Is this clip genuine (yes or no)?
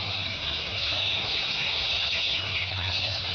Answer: no